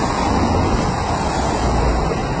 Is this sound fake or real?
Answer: real